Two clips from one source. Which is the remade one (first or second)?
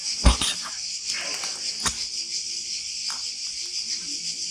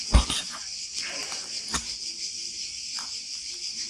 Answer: second